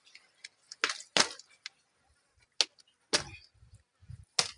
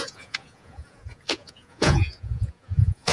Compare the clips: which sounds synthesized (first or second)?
second